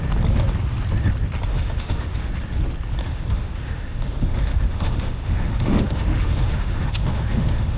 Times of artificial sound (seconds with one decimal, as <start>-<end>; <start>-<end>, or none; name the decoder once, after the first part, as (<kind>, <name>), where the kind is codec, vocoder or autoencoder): 1.5-2.3 (autoencoder, DAC-VAE); 3.0-7.8